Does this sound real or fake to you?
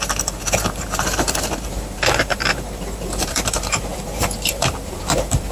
fake